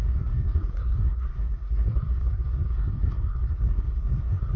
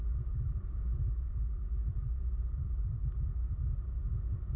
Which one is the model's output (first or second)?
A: first